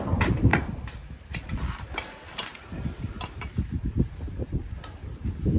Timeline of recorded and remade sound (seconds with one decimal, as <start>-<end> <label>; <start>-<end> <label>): 0.0-0.5 recorded; 0.5-1.9 remade; 1.9-5.6 recorded